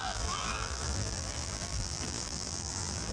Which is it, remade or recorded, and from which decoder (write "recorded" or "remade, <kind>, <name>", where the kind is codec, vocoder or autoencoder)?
remade, vocoder, BigVGAN v2